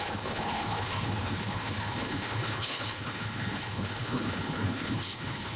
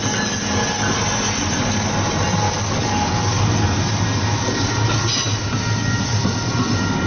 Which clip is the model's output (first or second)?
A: first